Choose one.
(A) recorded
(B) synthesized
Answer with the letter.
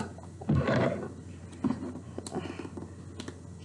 A